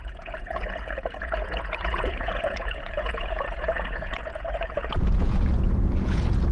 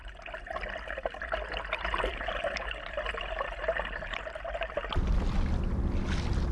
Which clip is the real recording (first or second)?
second